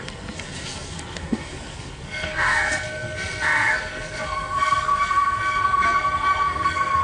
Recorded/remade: remade